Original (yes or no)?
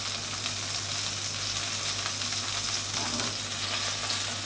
yes